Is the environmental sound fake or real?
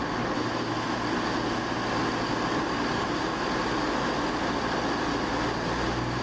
real